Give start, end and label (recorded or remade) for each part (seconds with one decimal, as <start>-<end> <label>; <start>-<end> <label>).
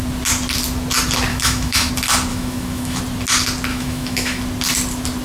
0.0-1.3 recorded; 1.3-1.9 remade; 1.9-2.3 recorded; 2.3-3.0 remade; 3.0-3.7 recorded; 3.7-4.4 remade; 4.4-5.2 recorded